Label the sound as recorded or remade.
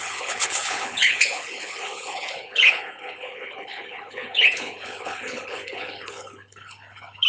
remade